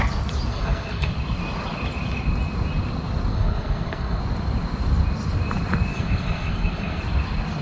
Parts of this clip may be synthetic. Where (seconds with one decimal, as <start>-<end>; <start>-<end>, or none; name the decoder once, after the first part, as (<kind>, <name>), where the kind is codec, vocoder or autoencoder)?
0.5-1.1 (codec, SNAC); 3.3-4.2; 5.9-7.0